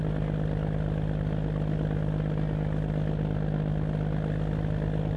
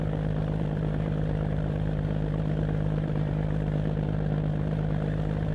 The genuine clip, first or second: first